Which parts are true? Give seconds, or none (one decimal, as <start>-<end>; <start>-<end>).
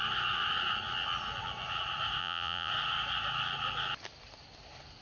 0.0-2.2; 2.7-5.0